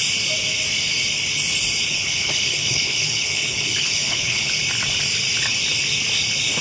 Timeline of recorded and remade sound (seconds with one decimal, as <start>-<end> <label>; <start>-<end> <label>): 0.0-1.9 recorded; 1.9-4.6 remade; 4.6-6.6 recorded